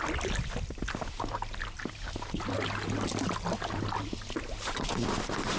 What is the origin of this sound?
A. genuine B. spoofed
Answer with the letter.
A